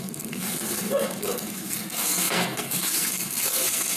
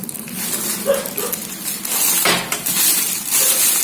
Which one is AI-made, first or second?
first